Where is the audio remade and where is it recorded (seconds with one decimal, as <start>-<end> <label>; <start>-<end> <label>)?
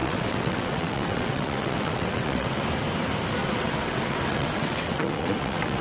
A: 0.0-2.6 remade; 2.6-3.4 recorded; 3.4-5.8 remade